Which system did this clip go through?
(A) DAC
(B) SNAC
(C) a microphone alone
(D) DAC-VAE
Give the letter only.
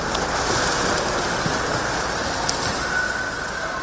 C